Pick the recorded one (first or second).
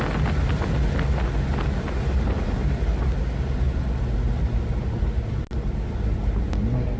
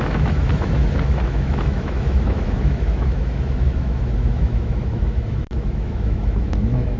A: first